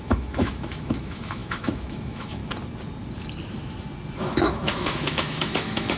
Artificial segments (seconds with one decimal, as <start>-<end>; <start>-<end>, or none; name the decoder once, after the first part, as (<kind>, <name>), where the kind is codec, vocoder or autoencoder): 0.0-2.4 (autoencoder, DAC-VAE); 4.2-6.0